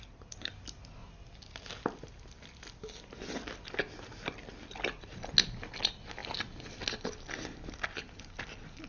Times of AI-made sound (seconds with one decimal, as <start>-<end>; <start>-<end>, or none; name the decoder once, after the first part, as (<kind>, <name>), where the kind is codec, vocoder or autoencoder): none